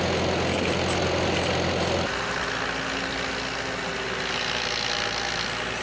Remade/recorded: recorded